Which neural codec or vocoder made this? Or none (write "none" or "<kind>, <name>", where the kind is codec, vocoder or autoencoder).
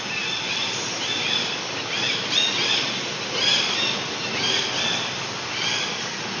none